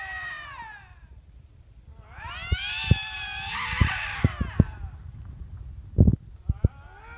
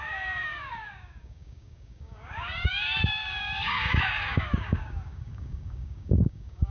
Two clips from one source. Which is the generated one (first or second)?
second